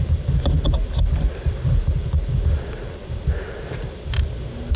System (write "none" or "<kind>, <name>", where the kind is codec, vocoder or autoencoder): none